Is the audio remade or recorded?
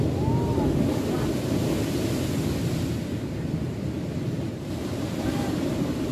recorded